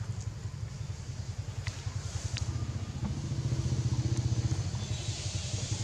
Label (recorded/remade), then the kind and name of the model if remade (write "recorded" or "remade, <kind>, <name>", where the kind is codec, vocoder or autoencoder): recorded